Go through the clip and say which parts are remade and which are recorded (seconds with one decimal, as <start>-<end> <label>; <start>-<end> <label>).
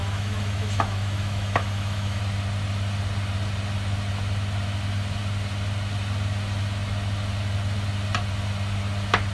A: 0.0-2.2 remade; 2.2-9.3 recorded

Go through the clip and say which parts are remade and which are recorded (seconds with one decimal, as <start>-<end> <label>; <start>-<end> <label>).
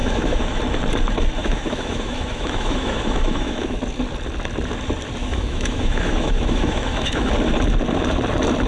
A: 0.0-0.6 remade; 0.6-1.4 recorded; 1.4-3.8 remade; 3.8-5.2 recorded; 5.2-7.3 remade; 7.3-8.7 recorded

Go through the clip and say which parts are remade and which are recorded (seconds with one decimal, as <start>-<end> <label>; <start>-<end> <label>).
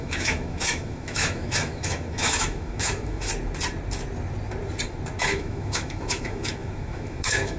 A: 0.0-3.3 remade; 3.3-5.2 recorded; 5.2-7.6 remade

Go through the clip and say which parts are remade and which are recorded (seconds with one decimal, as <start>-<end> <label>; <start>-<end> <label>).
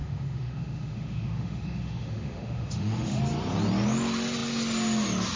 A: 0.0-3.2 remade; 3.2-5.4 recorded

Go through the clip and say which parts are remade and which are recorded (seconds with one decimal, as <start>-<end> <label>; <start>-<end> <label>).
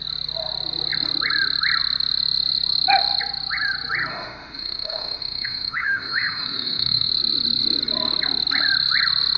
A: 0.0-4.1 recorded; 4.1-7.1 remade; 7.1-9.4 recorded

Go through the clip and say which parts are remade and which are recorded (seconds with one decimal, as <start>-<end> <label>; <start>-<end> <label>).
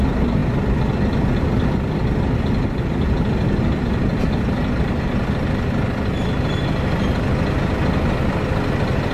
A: 0.0-9.1 recorded